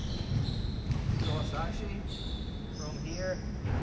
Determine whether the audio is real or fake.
real